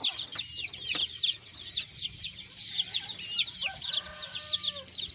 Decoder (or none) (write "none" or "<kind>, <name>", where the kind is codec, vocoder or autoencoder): none